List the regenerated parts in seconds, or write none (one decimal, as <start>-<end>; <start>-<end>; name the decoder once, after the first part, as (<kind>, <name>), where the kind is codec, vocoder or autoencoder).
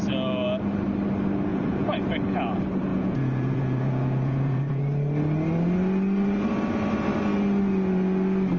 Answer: 1.5-2.0 (vocoder, Vocos); 2.9-4.8